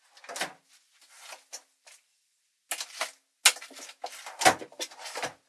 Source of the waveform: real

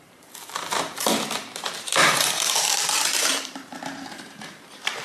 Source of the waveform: fake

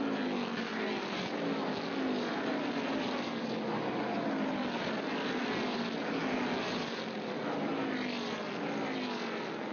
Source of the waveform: real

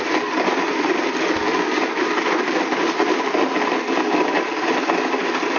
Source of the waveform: real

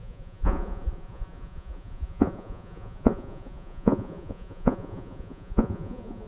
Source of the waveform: fake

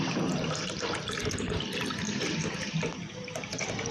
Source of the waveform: fake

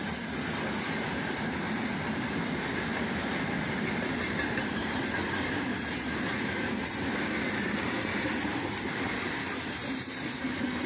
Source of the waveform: real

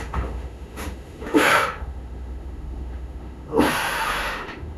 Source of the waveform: fake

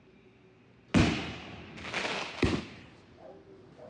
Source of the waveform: real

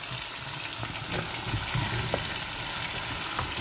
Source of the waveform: real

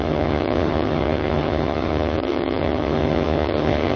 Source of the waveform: fake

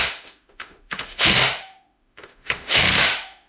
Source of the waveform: fake